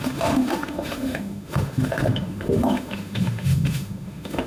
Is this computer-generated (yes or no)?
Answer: yes